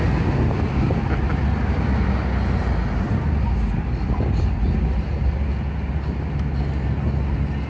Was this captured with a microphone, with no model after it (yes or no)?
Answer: yes